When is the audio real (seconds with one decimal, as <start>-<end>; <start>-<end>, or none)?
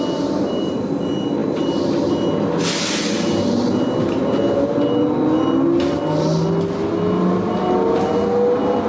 0.0-8.9